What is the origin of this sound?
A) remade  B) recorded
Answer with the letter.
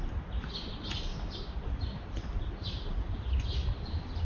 B